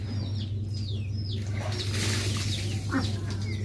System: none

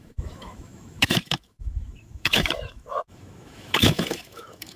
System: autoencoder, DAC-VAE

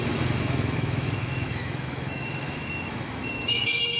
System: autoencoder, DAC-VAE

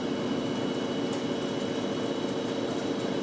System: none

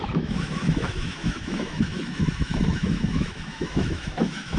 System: autoencoder, DAC-VAE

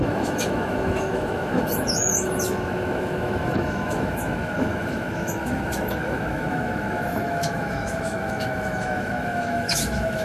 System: autoencoder, DAC-VAE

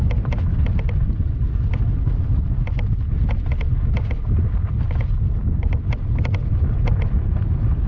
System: none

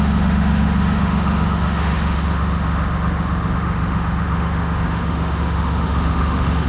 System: autoencoder, DAC-VAE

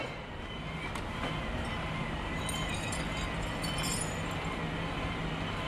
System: none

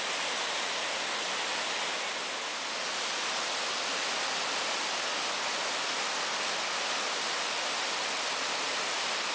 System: none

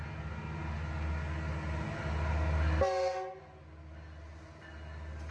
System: none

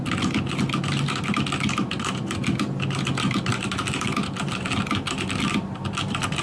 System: none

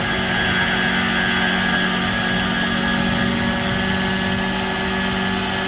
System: none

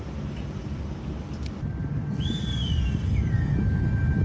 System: none